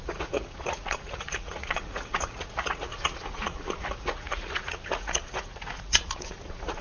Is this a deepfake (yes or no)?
yes